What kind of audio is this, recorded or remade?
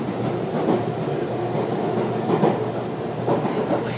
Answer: recorded